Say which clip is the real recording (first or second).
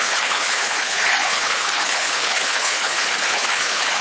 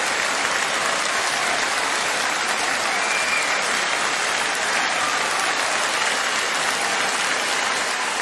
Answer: second